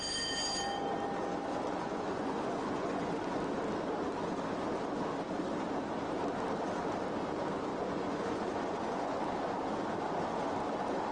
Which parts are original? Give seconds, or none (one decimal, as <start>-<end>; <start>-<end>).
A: 0.0-1.5; 3.1-7.7; 9.2-11.1